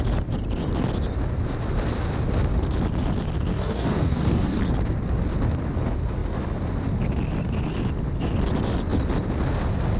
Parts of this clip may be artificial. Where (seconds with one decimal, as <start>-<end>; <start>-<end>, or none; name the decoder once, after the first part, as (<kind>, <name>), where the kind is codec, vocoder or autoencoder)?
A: 3.5-4.6 (codec, DAC)